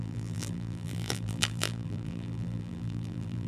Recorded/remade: remade